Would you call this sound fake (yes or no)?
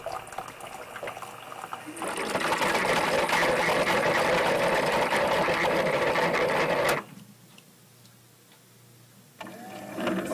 no